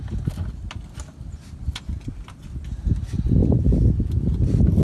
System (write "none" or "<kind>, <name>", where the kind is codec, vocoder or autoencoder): none